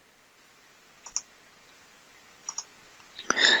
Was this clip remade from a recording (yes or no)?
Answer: no